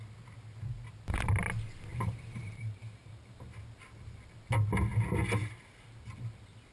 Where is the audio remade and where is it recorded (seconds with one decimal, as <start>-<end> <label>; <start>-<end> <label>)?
0.0-1.9 recorded; 1.9-3.6 remade; 3.6-6.7 recorded